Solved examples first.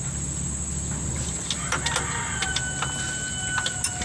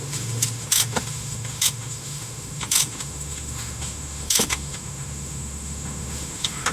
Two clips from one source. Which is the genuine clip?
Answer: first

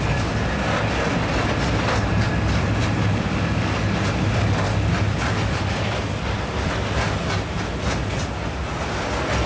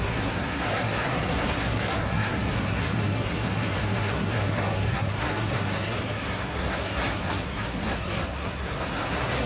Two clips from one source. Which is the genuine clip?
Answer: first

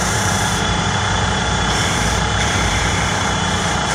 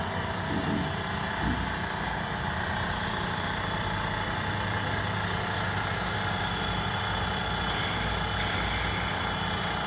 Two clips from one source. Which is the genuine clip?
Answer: second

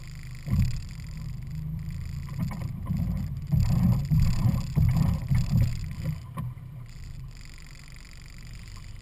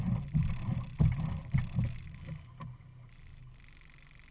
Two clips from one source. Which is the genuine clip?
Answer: second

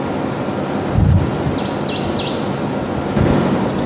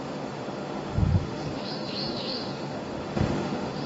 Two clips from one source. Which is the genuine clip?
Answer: first